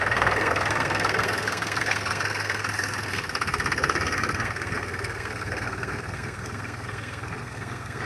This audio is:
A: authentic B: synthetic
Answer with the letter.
B